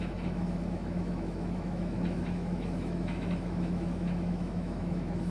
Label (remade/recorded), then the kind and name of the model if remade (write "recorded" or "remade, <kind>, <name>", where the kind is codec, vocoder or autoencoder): remade, autoencoder, DAC-VAE